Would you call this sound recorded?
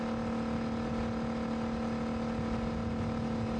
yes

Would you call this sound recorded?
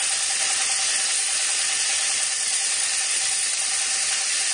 yes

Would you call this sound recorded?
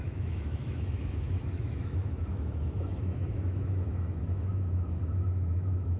no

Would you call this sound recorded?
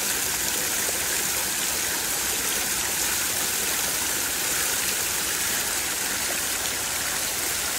yes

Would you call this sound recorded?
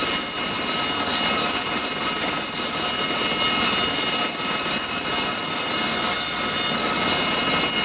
yes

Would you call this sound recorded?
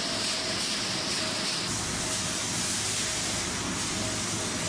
yes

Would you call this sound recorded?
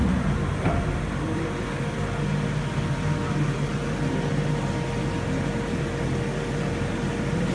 yes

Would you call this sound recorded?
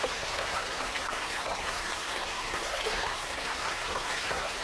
no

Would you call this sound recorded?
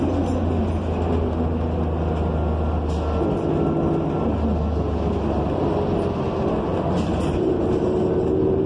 yes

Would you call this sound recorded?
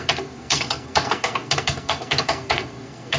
no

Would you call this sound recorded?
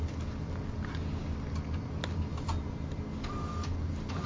yes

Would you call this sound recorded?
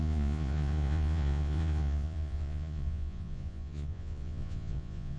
no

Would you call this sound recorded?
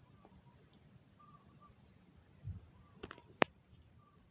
yes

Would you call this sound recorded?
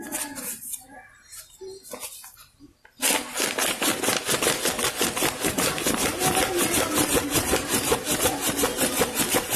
yes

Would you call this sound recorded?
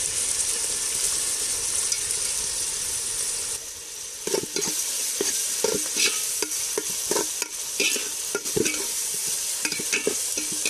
yes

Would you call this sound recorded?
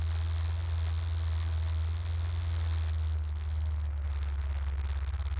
yes